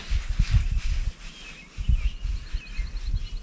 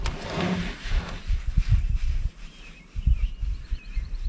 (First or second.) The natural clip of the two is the first